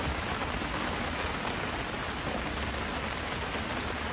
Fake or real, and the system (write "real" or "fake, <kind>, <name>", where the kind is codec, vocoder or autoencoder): real